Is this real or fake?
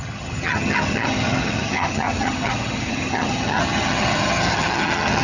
fake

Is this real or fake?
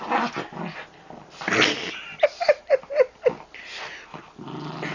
real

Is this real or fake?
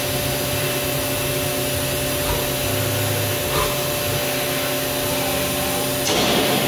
real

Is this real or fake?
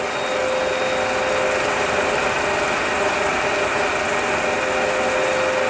real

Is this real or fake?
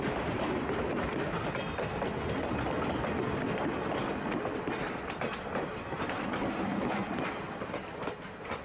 real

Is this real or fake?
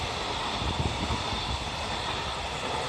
real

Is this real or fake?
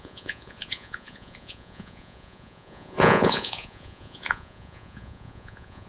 fake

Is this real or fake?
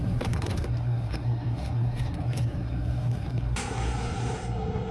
fake